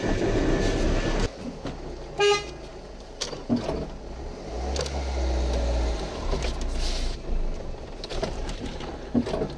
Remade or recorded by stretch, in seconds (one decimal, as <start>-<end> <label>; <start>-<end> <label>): 0.0-8.1 recorded; 8.1-8.9 remade; 8.9-9.6 recorded